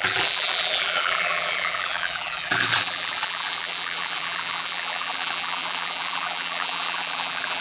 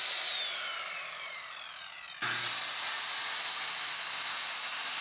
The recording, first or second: second